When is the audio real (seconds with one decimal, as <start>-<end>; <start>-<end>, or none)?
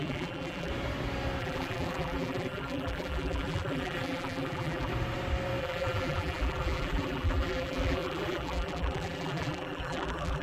0.7-1.4; 4.9-5.6